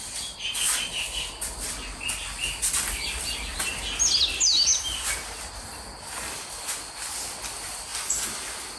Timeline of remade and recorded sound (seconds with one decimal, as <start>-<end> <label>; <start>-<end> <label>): 0.0-8.8 recorded

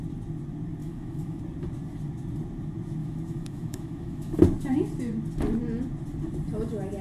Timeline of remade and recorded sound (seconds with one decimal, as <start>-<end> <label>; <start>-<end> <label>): 0.0-0.8 recorded; 0.8-1.4 remade; 1.4-3.0 recorded; 3.0-4.4 remade; 4.4-7.0 recorded

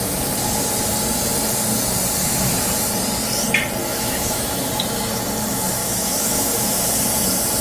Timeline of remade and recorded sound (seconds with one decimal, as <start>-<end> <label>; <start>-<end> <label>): 0.0-3.8 recorded; 3.8-4.7 remade; 4.7-5.8 recorded; 5.8-6.9 remade; 6.9-7.6 recorded